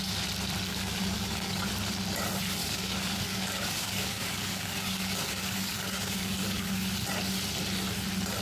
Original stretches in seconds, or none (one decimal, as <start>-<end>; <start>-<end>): 0.0-0.7; 1.7-2.6; 6.7-8.4